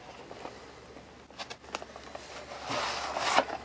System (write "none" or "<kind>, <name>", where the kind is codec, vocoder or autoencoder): none